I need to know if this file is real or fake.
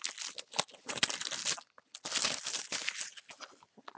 real